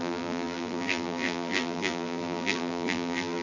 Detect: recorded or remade remade